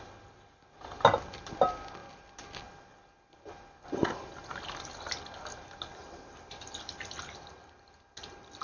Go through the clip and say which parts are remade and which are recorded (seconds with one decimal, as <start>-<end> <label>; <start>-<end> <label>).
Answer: 0.0-5.9 recorded; 5.9-8.6 remade